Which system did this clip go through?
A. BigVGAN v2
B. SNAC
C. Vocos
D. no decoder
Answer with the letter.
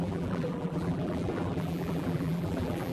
A